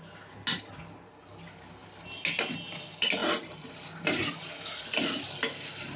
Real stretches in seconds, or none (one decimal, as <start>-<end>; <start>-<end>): 0.0-6.0